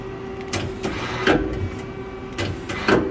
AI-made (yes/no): no